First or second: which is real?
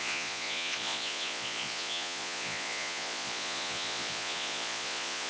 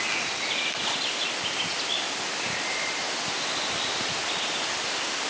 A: second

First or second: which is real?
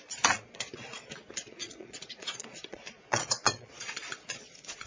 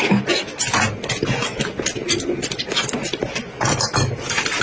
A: second